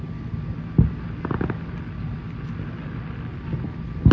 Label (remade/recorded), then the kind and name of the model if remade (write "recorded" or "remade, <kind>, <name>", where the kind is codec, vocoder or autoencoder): recorded